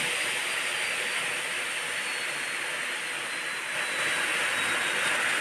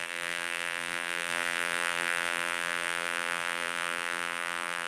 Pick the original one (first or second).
first